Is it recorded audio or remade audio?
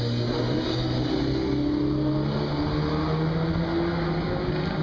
recorded